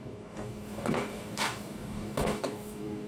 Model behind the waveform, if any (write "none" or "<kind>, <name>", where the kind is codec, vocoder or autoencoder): codec, DAC